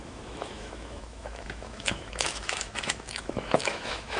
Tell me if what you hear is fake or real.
fake